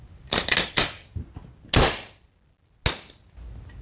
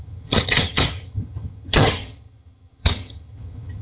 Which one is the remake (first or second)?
second